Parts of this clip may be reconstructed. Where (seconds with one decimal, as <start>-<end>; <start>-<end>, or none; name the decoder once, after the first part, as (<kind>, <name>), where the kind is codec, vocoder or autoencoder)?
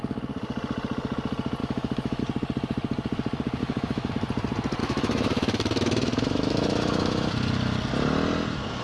1.6-2.2 (autoencoder, DAC-VAE); 3.6-4.1; 4.8-7.3